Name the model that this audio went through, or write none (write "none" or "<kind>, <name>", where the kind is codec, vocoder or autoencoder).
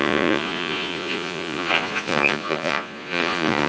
vocoder, Vocos